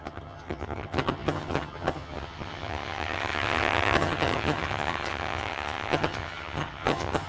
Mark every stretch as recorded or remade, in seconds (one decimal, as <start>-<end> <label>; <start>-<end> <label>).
0.0-7.3 remade